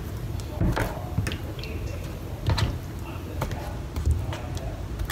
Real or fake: real